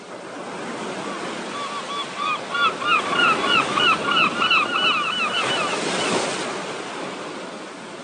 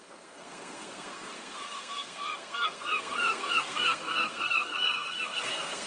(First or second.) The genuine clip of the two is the first